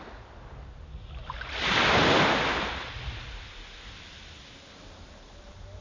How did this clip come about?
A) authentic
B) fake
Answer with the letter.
A